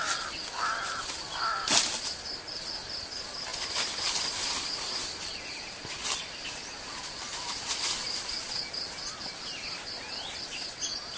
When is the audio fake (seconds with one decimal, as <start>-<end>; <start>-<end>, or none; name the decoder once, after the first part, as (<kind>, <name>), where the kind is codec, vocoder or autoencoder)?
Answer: none